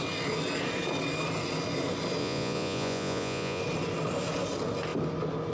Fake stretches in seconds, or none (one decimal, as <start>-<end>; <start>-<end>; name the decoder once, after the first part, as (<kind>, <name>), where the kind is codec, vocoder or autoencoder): 2.2-3.6 (vocoder, Vocos)